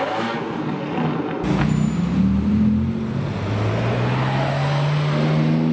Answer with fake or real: real